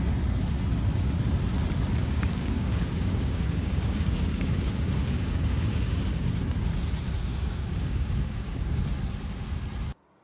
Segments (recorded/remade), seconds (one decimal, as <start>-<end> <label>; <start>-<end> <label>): 0.0-2.0 recorded; 2.0-6.3 remade; 6.3-7.3 recorded; 7.3-8.8 remade; 8.8-10.2 recorded